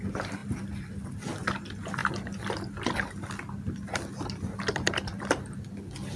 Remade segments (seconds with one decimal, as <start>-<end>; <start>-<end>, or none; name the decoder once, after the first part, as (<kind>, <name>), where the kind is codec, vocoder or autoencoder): none